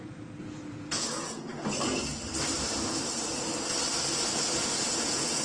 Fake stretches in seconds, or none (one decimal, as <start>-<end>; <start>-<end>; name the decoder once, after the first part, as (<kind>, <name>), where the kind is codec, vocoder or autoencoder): 0.0-1.5 (vocoder, Vocos); 4.3-5.4